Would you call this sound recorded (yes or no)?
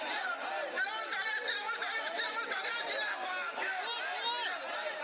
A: yes